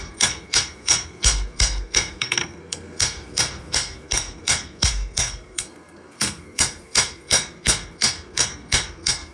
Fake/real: fake